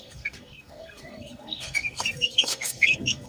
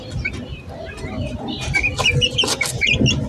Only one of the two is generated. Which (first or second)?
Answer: first